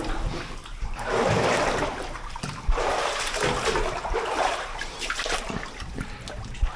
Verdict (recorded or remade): recorded